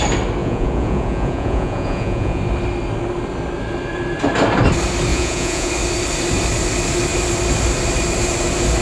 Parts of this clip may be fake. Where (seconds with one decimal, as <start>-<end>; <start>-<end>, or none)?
0.4-2.4; 5.1-5.7